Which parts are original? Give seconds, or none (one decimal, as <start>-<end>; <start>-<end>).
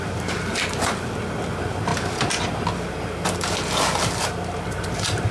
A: 0.0-5.3